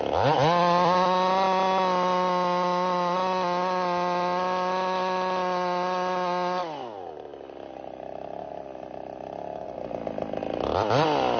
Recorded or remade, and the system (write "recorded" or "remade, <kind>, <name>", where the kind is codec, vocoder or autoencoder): recorded